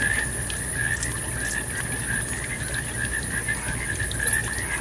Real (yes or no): yes